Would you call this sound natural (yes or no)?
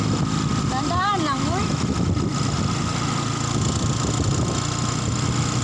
yes